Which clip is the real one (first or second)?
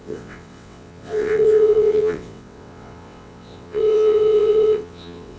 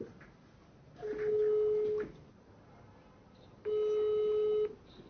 second